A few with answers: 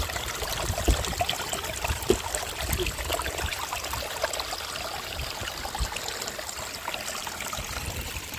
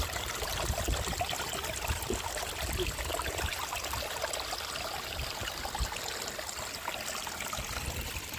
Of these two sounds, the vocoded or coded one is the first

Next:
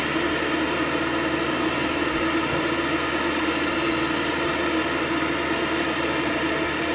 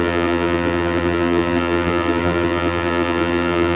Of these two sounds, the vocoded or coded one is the second